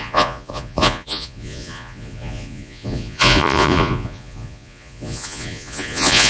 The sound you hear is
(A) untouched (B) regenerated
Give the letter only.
B